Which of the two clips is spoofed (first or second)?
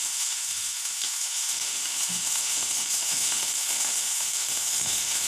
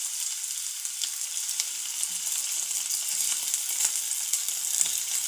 first